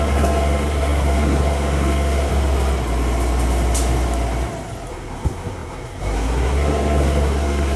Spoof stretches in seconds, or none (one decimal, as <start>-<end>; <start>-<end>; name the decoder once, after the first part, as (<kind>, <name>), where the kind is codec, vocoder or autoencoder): 0.0-2.3 (codec, SNAC); 4.9-7.8